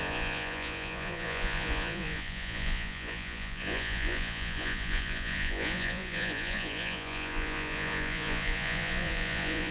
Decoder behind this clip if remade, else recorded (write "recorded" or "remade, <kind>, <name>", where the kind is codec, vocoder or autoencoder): remade, vocoder, Vocos